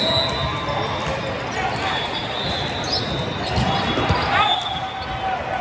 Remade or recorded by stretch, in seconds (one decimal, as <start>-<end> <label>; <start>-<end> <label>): 0.0-5.6 recorded

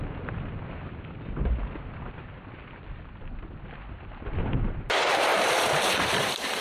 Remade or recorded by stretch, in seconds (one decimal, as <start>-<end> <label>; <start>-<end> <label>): 0.0-5.3 recorded; 5.3-6.6 remade